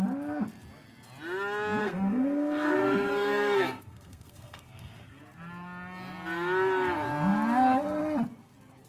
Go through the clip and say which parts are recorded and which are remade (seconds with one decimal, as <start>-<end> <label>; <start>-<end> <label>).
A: 0.0-1.8 recorded; 1.8-5.2 remade; 5.2-8.9 recorded